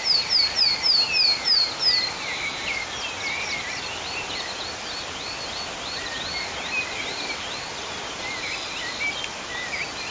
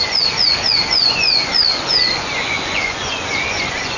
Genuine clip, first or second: first